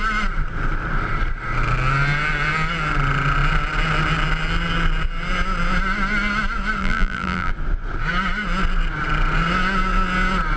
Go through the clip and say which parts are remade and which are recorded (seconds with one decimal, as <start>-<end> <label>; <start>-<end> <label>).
0.0-6.8 recorded; 6.8-7.5 remade; 7.5-10.6 recorded